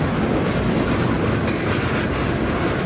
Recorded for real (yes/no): yes